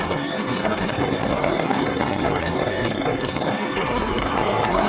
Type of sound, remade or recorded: remade